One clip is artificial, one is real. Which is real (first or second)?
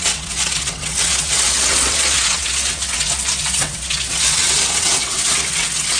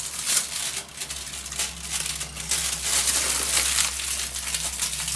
second